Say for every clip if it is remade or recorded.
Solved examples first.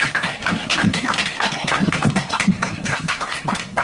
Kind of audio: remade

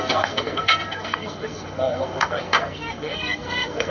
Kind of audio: remade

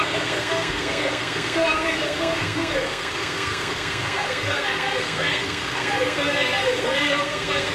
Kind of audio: remade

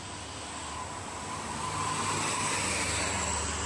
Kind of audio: recorded